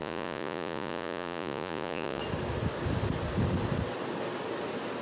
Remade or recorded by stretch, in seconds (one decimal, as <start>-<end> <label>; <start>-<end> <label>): 0.0-2.2 remade; 2.2-5.0 recorded